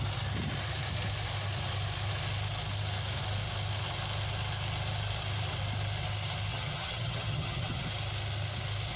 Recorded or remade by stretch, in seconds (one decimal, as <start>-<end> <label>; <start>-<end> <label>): 0.0-6.5 recorded; 6.5-7.8 remade; 7.8-9.0 recorded